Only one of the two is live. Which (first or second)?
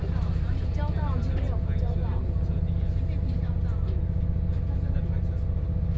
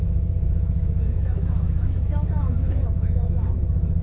first